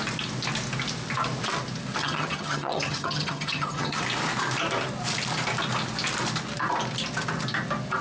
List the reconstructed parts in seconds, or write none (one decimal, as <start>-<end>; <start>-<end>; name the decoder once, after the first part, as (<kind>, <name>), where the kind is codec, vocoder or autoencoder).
2.0-4.0 (vocoder, HiFi-GAN)